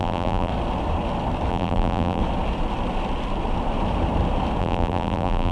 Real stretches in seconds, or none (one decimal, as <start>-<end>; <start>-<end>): 0.5-1.5; 2.2-4.6

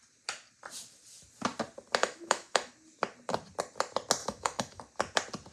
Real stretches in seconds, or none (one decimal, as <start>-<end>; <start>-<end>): 0.0-2.0; 2.7-4.2; 4.8-5.5